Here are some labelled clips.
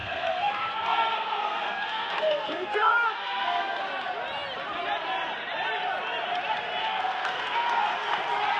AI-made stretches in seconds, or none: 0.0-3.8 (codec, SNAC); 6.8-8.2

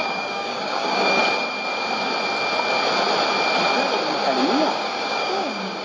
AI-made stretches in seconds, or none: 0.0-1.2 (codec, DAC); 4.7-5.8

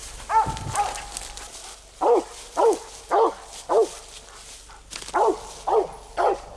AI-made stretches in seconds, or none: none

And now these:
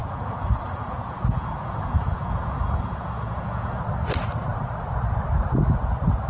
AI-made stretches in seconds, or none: 0.0-3.8 (vocoder, Vocos)

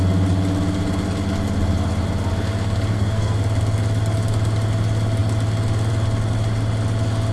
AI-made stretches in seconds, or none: 2.9-3.4 (codec, SNAC)

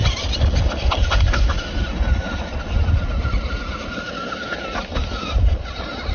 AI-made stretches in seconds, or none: none